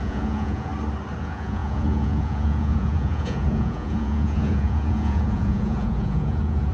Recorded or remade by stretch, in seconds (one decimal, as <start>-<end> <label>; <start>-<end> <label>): 0.0-0.7 remade; 0.7-1.2 recorded; 1.2-6.7 remade